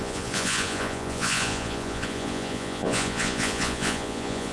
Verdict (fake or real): fake